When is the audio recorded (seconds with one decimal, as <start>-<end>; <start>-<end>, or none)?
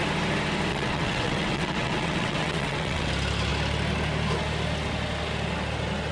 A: 0.0-0.7; 3.1-6.1